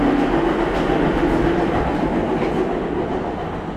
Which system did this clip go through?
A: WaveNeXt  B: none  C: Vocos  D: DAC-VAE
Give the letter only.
B